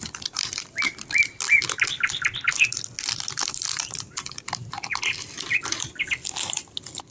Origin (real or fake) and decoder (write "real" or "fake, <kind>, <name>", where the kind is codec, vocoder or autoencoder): real